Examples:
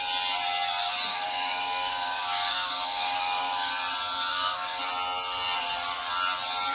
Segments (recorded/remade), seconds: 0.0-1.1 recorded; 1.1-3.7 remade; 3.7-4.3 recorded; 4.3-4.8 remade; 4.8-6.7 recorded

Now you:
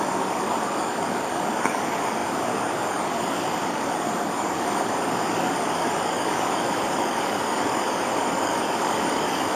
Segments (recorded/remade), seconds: 0.0-9.6 remade

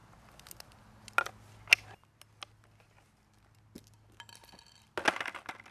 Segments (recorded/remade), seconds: 0.0-5.7 recorded

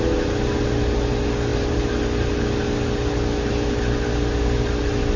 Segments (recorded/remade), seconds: 0.0-5.2 recorded

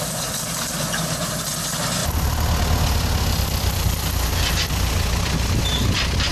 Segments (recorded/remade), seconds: 0.0-6.3 recorded